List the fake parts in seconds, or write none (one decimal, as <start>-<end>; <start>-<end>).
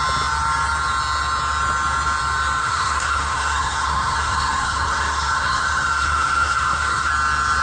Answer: 2.6-7.1